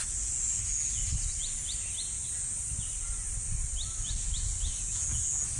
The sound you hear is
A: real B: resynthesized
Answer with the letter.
A